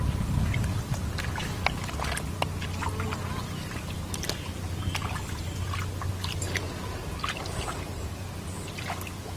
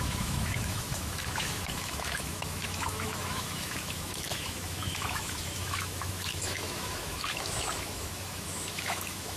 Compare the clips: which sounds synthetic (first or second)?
second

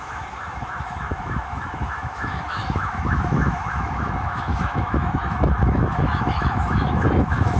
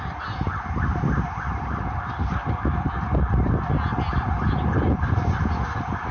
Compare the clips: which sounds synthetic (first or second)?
first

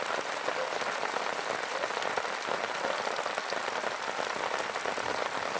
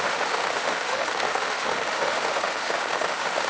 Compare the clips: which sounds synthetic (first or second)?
second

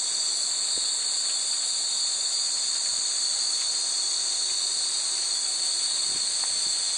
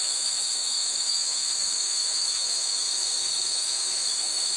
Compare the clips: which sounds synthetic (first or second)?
second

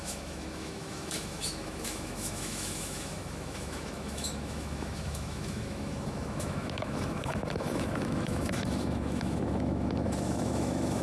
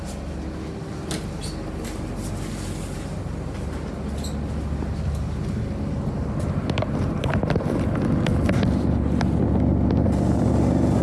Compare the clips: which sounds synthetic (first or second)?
first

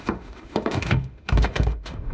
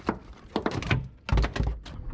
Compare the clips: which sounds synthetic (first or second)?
first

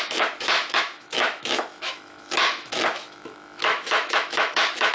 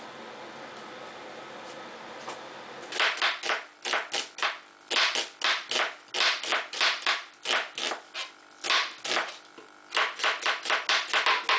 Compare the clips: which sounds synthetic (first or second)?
first